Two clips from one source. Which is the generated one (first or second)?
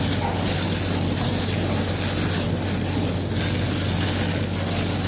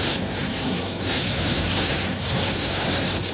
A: second